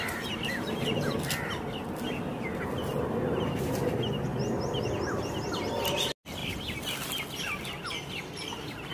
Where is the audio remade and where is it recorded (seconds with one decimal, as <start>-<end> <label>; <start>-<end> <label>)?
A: 0.0-8.9 recorded